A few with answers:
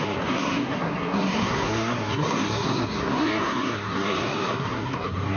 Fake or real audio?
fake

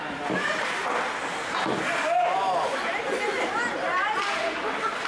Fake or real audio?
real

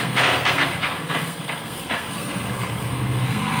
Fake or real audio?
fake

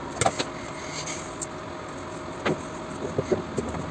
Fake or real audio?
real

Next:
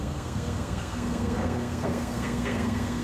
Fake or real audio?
fake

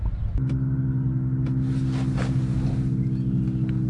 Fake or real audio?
real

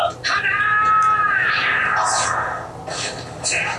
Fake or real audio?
real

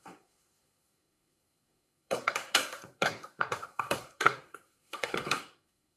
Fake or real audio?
fake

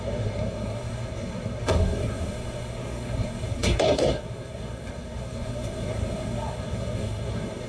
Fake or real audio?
fake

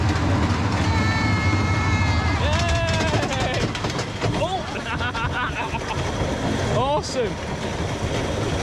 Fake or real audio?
real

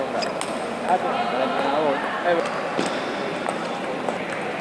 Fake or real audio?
real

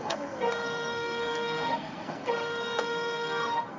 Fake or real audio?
fake